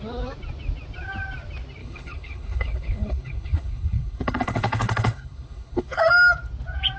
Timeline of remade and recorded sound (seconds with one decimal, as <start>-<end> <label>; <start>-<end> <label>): 0.0-1.8 recorded; 1.8-6.0 remade; 6.0-7.0 recorded